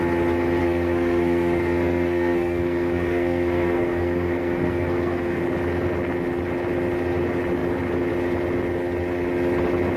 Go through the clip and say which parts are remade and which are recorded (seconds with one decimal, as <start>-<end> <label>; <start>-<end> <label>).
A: 0.0-0.6 recorded; 0.6-5.4 remade; 5.4-10.0 recorded